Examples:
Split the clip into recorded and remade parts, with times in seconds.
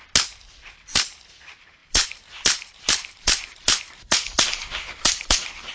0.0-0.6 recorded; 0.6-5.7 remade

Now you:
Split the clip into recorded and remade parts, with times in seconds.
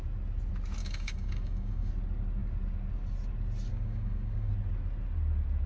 0.0-0.8 recorded; 0.8-1.9 remade; 1.9-3.7 recorded; 3.7-4.5 remade; 4.5-5.7 recorded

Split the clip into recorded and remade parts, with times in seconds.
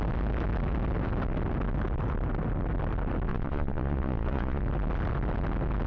0.0-3.3 recorded; 3.3-4.6 remade; 4.6-5.9 recorded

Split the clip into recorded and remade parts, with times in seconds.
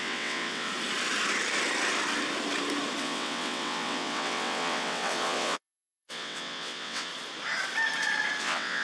0.0-0.7 remade; 0.7-3.0 recorded; 3.0-7.1 remade; 7.1-8.4 recorded; 8.4-8.8 remade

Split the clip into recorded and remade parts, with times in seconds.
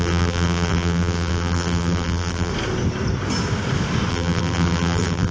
0.0-2.5 remade; 2.5-4.1 recorded; 4.1-5.3 remade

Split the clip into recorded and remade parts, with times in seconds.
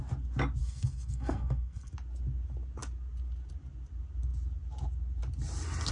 0.0-0.6 recorded; 0.6-1.9 remade; 1.9-5.9 recorded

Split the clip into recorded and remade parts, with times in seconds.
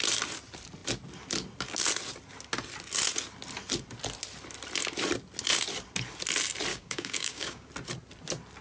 0.0-6.7 recorded; 6.7-7.7 remade; 7.7-8.6 recorded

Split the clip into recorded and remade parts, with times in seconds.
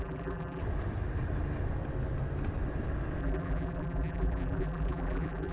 0.0-0.6 remade; 0.6-3.2 recorded; 3.2-5.5 remade